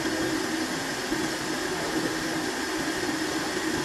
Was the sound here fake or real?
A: real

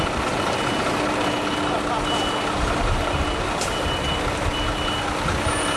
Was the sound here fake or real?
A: real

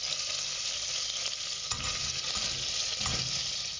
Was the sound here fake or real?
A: real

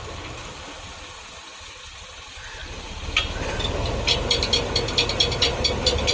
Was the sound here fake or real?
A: real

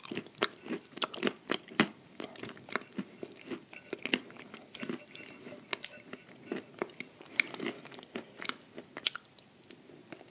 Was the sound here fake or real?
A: real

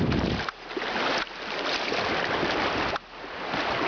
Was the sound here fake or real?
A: real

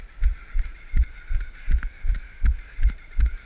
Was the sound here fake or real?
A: real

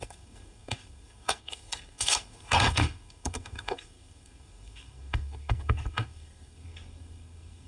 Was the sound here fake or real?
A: fake